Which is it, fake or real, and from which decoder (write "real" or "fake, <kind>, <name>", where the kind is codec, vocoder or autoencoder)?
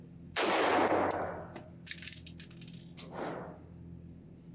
real